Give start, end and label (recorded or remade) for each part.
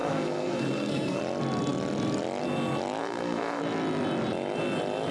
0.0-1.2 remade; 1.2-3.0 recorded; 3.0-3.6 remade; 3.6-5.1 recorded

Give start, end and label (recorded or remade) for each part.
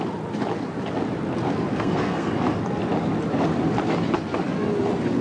0.0-1.7 recorded; 1.7-2.3 remade; 2.3-5.2 recorded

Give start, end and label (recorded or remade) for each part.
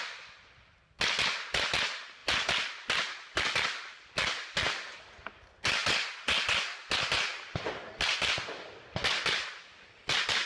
0.0-10.5 recorded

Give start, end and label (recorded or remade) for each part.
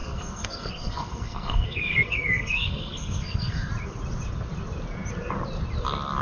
0.0-3.7 remade; 3.7-6.2 recorded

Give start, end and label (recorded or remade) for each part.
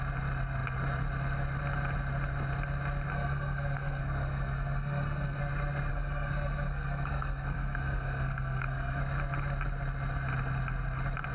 0.0-3.1 recorded; 3.1-5.4 remade; 5.4-5.9 recorded; 5.9-9.0 remade; 9.0-11.3 recorded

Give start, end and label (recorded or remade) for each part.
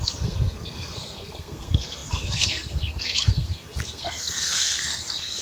0.0-5.4 remade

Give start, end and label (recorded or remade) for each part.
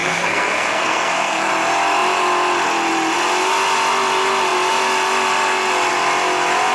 0.0-1.5 remade; 1.5-6.7 recorded